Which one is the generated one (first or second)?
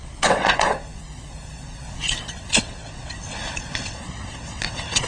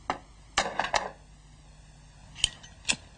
first